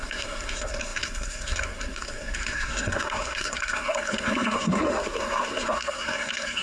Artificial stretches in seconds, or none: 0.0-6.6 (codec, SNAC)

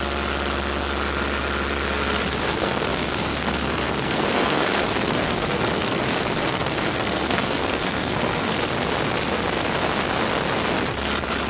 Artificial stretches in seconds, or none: 2.5-6.0 (codec, SNAC); 6.5-8.7

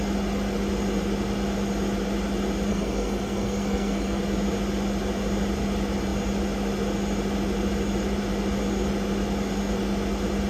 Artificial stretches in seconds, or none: 2.7-4.2 (codec, SNAC)

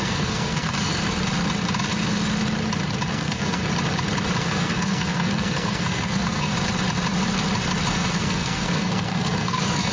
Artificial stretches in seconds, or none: 0.0-0.9 (codec, SNAC); 3.1-3.6; 4.4-6.5; 7.9-9.9